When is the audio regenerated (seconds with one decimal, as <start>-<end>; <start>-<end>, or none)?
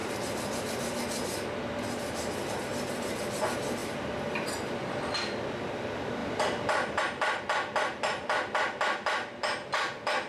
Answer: 3.8-4.9; 6.2-7.0